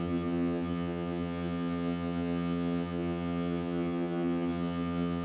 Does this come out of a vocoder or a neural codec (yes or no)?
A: yes